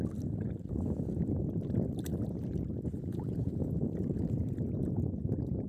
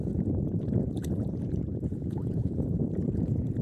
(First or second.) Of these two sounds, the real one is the first